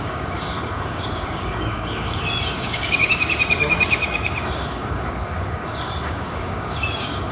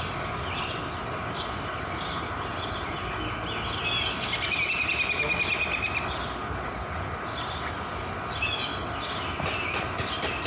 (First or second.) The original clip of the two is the second